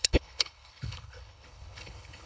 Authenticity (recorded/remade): remade